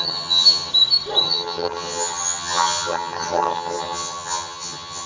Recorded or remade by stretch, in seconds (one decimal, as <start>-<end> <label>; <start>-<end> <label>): 0.0-0.7 remade; 0.7-1.2 recorded; 1.2-5.1 remade